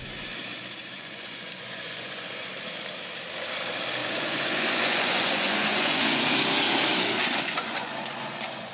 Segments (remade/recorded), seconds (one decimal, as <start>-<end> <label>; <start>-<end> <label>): 0.0-0.8 recorded; 0.8-2.5 remade; 2.5-4.0 recorded; 4.0-6.2 remade; 6.2-7.2 recorded; 7.2-8.7 remade